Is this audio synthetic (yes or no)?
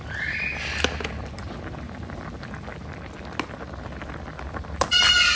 no